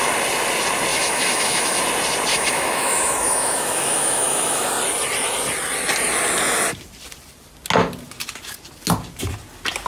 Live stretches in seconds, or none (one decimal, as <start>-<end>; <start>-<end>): 0.0-0.9; 1.8-2.3; 4.7-9.9